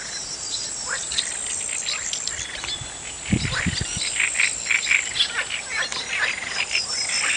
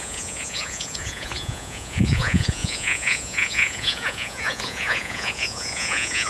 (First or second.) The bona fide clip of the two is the first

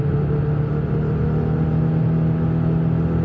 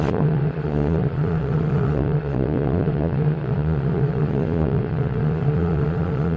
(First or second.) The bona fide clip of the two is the first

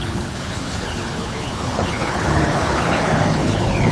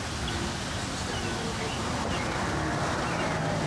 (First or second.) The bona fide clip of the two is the second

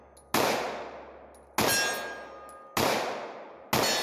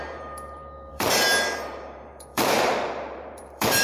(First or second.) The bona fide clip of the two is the first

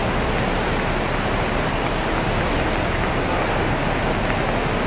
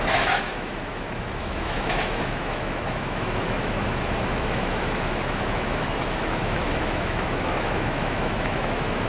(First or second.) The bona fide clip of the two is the first